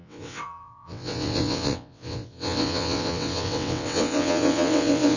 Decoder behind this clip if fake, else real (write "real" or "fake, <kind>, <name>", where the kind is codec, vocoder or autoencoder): fake, vocoder, WaveNeXt